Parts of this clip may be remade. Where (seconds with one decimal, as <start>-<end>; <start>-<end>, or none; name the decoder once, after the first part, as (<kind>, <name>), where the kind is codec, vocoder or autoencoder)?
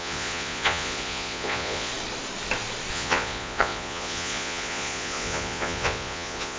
0.0-1.9 (vocoder, Vocos); 2.9-6.6